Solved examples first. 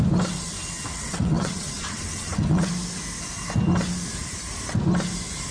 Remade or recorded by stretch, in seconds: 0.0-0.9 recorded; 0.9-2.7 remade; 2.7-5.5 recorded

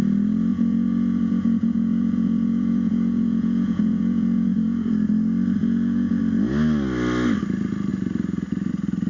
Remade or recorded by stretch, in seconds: 0.0-0.5 recorded; 0.5-4.9 remade; 4.9-5.6 recorded; 5.6-6.2 remade; 6.2-9.1 recorded

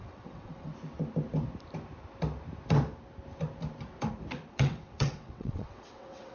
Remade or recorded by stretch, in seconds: 0.0-0.7 remade; 0.7-4.5 recorded; 4.5-6.3 remade

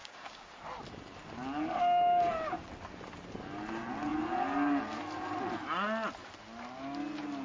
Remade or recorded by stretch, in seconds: 0.0-0.5 remade; 0.5-1.8 recorded; 1.8-2.7 remade; 2.7-7.4 recorded